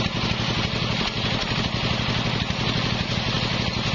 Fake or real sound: real